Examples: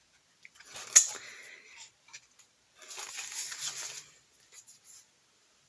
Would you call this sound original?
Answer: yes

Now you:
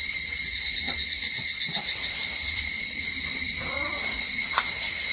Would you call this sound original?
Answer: no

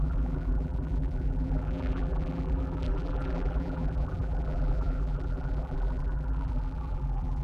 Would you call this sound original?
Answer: no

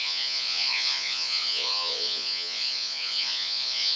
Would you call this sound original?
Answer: no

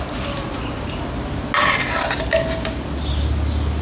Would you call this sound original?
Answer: yes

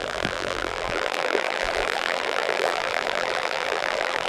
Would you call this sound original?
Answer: no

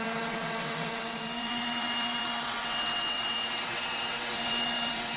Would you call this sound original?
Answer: no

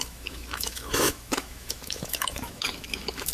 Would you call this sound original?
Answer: no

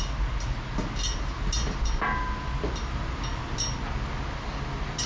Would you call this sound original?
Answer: yes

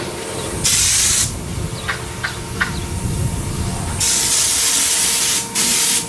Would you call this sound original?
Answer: yes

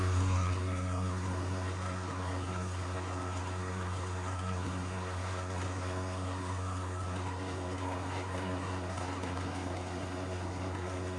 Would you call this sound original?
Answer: no